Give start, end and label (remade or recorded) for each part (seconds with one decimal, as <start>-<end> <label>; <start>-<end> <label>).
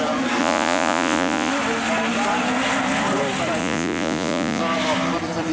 0.0-0.4 recorded; 0.4-1.5 remade; 1.5-3.6 recorded; 3.6-4.6 remade; 4.6-5.5 recorded